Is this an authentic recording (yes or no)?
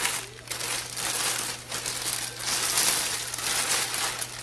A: yes